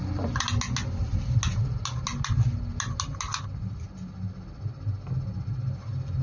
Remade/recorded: recorded